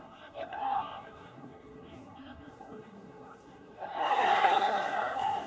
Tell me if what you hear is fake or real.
fake